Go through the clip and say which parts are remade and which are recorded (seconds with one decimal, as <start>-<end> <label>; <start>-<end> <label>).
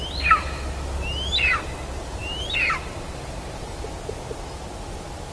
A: 0.0-2.2 recorded; 2.2-3.8 remade; 3.8-5.3 recorded